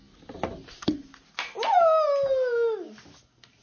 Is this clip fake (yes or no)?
no